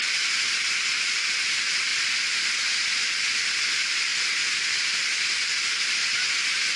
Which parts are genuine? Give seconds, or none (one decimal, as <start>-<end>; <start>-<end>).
0.0-6.8